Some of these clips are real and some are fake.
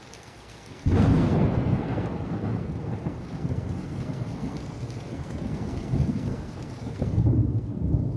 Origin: fake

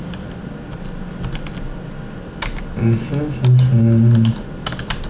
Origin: real